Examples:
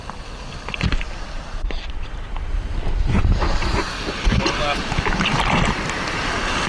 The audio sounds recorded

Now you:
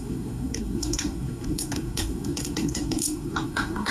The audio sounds remade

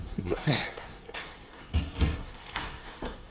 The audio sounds remade